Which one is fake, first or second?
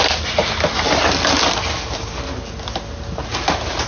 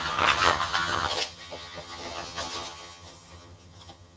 second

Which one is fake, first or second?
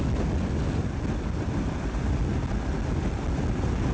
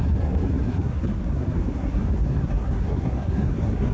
second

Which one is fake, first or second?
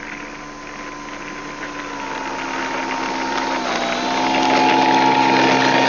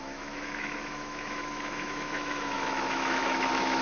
second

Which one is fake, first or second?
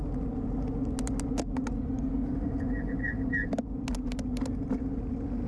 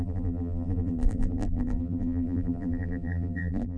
second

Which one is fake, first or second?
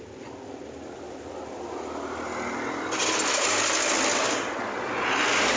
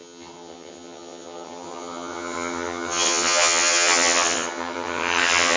second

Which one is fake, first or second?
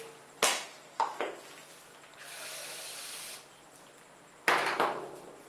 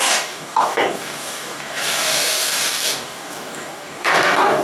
second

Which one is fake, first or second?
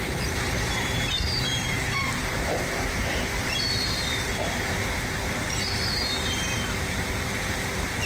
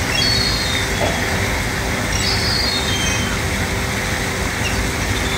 first